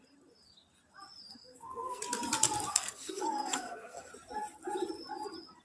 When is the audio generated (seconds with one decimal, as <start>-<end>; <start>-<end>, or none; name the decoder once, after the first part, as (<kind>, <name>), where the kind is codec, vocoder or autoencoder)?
1.3-2.0 (codec, SNAC); 2.7-4.1